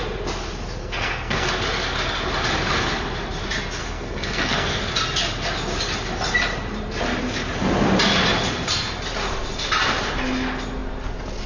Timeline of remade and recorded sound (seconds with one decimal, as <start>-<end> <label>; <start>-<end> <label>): 0.0-0.8 recorded; 0.8-1.5 remade; 1.5-3.8 recorded; 3.8-4.8 remade; 4.8-11.5 recorded